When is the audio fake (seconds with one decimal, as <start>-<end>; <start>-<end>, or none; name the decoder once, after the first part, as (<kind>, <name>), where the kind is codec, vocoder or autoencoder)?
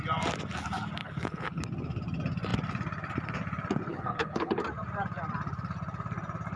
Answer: 1.0-1.6 (codec, HILCodec); 3.9-4.6